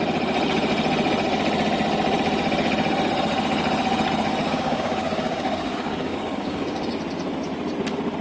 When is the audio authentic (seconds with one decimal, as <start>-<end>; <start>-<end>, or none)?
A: 0.0-4.4; 7.0-8.2